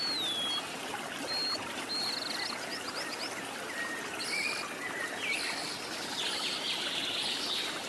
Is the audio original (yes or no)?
yes